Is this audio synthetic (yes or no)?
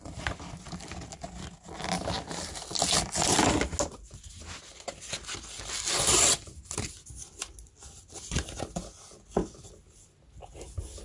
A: no